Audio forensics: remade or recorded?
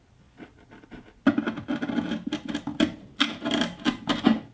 recorded